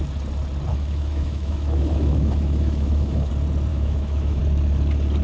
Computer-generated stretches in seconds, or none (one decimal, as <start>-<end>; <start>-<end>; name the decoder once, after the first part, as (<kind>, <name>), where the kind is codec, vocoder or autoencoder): 0.7-3.3 (autoencoder, DAC-VAE); 3.7-4.4